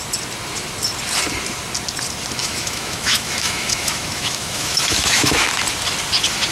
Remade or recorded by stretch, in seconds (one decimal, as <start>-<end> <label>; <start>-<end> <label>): 0.0-2.4 recorded; 2.4-5.5 remade; 5.5-6.5 recorded